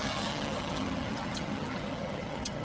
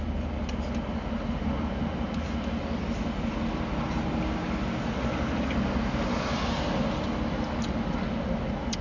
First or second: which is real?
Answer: second